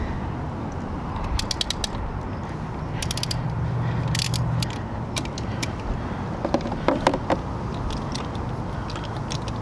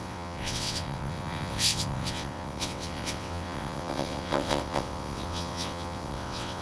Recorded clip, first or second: first